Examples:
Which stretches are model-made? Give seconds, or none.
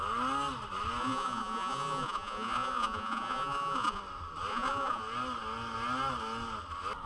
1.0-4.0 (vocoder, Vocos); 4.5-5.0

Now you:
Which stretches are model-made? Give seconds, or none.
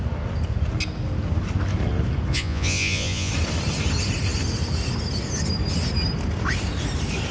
2.3-3.3 (vocoder, Vocos)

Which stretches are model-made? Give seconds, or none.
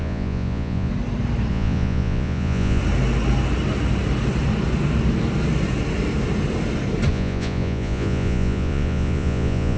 0.0-0.9 (vocoder, Vocos); 1.5-2.8; 7.1-9.8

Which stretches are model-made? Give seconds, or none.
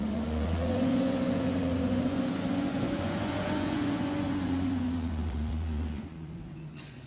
0.0-7.1 (vocoder, Vocos)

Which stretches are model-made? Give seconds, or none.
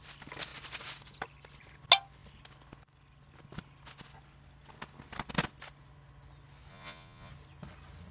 6.7-7.3 (vocoder, Vocos)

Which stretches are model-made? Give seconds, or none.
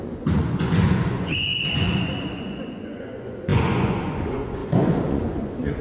0.0-5.8 (vocoder, Vocos)